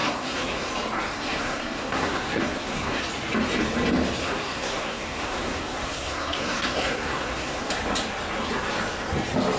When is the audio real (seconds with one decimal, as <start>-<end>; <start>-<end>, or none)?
0.7-1.1; 3.0-4.2; 7.7-9.6